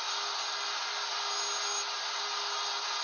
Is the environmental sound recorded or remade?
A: recorded